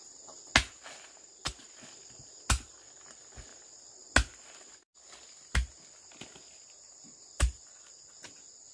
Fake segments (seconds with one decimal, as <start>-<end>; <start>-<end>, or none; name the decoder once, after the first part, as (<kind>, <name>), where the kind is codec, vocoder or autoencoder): none